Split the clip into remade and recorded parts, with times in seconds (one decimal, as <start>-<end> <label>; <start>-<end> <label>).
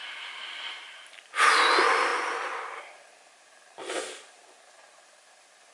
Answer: 0.0-5.7 recorded